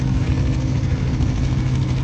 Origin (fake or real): fake